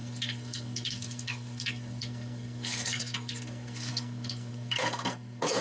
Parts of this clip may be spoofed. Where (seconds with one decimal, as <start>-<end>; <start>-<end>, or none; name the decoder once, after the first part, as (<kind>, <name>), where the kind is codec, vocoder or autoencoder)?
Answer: 0.0-5.6 (codec, SNAC)